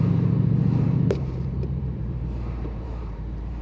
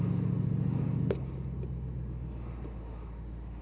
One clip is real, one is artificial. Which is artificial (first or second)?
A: first